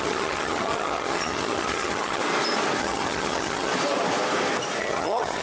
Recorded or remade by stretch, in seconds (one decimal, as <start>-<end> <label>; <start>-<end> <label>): 0.0-2.2 remade; 2.2-2.8 recorded; 2.8-3.7 remade; 3.7-4.8 recorded; 4.8-5.4 remade